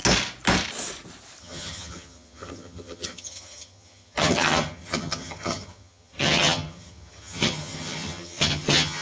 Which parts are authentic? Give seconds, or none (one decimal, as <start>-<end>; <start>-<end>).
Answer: 0.0-1.4